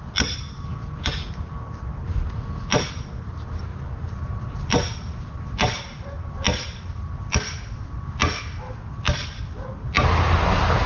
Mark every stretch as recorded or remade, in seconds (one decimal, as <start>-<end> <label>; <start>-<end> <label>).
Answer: 0.0-0.7 recorded; 0.7-1.3 remade; 1.3-10.9 recorded